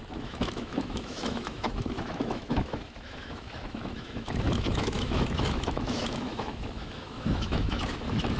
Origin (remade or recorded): remade